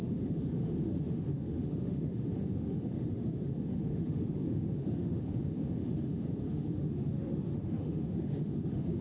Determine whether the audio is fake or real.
fake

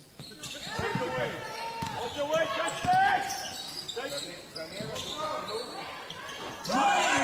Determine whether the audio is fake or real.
real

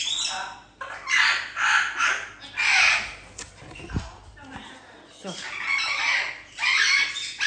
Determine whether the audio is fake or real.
real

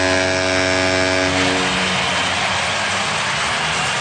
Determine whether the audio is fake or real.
real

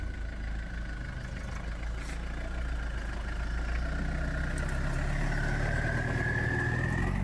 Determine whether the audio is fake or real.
real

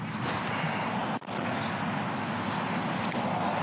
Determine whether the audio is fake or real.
real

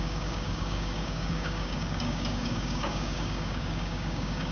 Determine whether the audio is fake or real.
fake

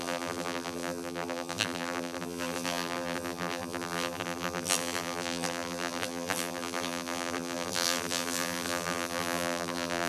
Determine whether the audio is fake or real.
fake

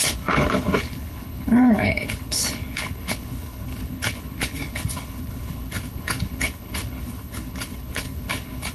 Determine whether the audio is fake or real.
fake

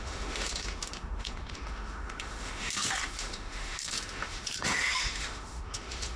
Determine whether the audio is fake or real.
fake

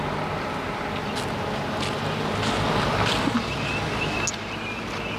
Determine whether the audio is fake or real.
real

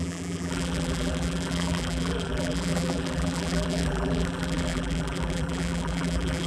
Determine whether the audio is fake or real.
fake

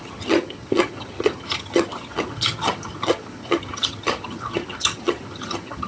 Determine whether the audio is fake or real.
fake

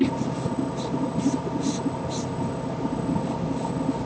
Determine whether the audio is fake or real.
real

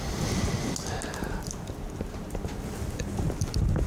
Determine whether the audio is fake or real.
real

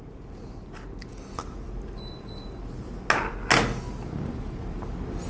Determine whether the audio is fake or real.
real